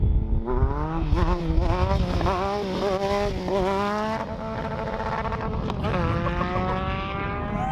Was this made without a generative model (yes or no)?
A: yes